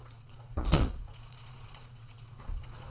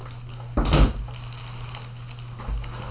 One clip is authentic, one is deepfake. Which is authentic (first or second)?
second